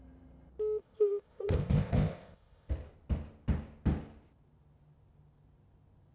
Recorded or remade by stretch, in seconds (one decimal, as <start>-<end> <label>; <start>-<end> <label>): 0.0-0.8 recorded; 0.8-2.7 remade; 2.7-6.1 recorded